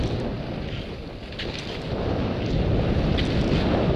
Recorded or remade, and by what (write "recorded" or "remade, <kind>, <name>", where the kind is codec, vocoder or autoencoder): recorded